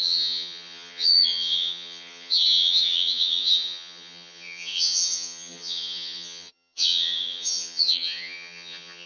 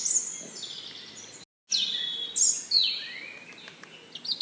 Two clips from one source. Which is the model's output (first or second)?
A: first